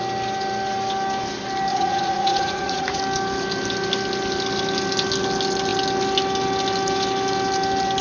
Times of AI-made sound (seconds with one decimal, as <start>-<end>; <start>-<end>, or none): 1.7-3.0